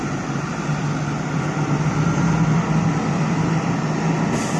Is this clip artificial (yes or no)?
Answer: no